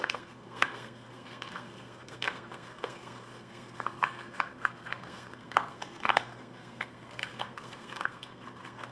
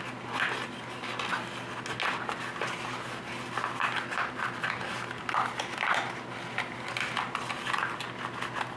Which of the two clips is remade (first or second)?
first